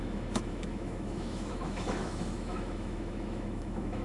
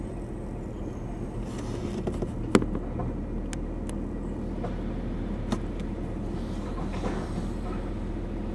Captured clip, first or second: second